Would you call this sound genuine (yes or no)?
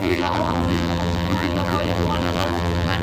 no